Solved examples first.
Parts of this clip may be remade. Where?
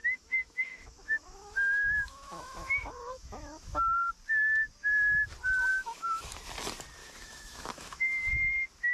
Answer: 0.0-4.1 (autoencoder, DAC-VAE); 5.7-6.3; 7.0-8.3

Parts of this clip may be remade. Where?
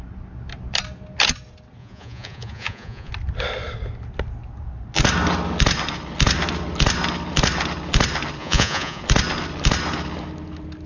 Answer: 1.8-3.1 (vocoder, Vocos); 8.4-9.0